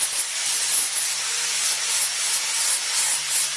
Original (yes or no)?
yes